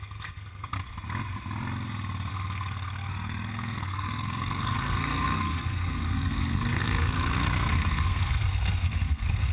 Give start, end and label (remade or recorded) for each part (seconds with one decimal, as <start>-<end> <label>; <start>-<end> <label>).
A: 0.0-0.7 remade; 0.7-2.3 recorded; 2.3-9.5 remade